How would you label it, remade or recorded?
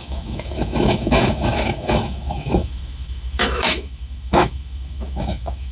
remade